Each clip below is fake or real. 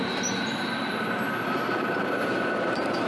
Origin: real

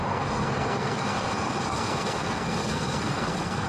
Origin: fake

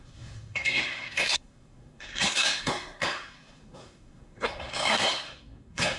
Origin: fake